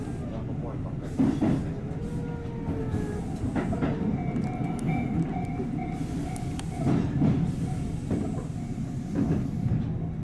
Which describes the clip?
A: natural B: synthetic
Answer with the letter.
A